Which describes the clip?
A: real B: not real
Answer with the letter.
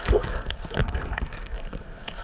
B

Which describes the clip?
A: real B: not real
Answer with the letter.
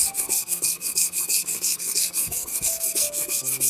B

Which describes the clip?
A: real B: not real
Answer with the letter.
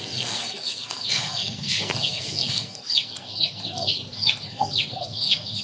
B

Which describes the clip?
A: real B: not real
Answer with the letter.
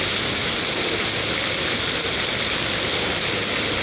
A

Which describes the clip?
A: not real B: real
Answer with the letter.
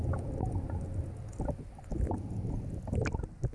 B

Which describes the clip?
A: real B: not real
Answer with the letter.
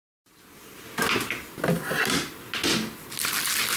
A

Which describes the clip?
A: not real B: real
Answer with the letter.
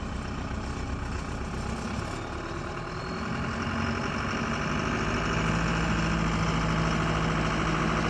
B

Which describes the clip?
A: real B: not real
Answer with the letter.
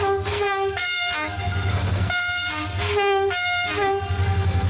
B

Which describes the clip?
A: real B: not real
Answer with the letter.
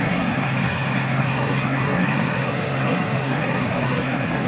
B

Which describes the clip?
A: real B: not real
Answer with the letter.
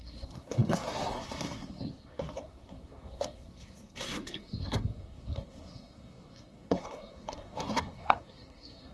B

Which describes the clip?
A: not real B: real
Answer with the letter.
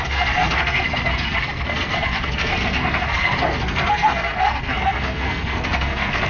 A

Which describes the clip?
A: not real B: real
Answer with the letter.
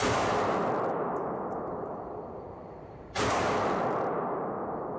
B